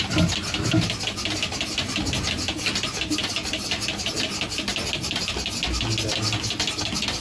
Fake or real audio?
real